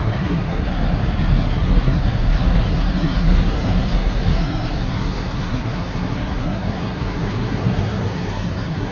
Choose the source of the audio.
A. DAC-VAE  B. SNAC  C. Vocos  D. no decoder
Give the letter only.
B